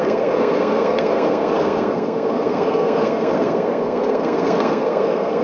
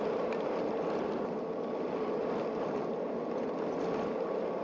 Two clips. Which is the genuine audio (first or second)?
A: second